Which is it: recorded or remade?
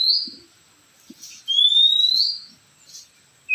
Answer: recorded